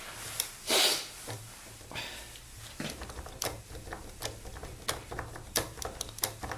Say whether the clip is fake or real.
real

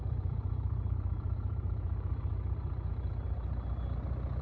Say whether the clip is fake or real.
fake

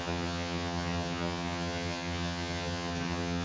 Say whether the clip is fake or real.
fake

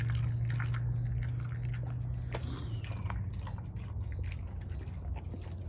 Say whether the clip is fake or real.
real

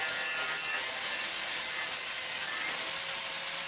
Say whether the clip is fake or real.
real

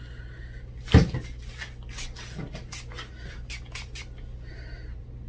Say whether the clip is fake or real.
real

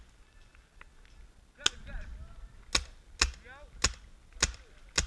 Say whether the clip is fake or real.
real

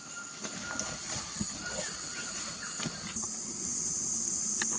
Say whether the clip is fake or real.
real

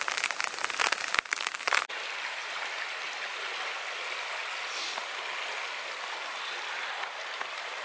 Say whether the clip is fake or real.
real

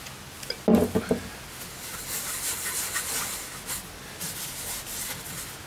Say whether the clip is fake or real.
real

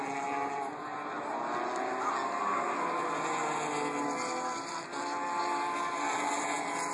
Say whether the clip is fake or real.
real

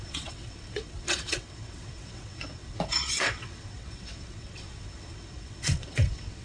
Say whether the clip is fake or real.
fake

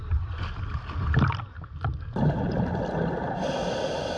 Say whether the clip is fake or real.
real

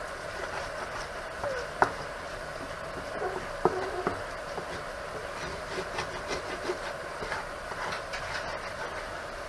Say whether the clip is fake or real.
real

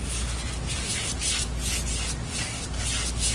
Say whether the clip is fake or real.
real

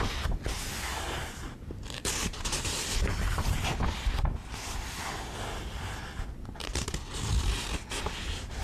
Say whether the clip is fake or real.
real